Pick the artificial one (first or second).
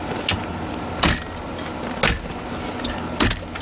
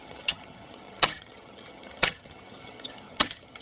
second